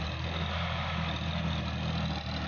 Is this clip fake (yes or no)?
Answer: no